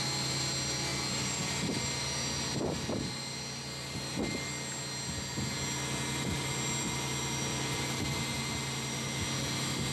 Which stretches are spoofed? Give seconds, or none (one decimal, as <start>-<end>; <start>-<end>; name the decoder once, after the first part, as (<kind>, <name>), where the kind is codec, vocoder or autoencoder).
none